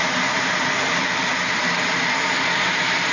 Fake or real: real